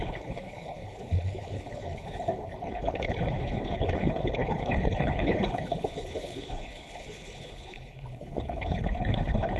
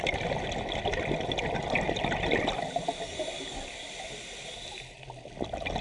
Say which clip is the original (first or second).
second